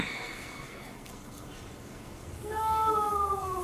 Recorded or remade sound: remade